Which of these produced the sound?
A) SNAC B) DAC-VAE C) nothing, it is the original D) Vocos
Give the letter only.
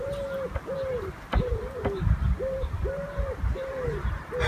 C